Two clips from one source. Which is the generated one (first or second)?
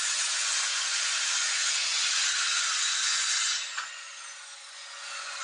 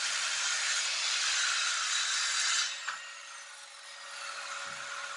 first